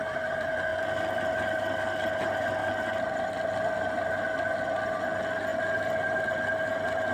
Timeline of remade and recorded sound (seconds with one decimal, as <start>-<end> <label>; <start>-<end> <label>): 0.0-2.6 recorded; 2.6-3.2 remade; 3.2-5.5 recorded; 5.5-7.1 remade